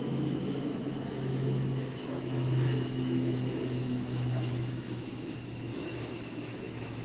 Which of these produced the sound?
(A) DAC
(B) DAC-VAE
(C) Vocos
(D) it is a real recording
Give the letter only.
B